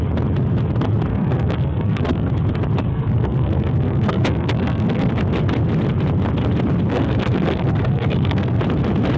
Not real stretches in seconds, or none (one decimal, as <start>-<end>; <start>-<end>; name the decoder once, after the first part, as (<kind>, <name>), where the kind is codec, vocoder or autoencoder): 1.1-2.3 (codec, SNAC); 2.9-5.1; 6.9-8.6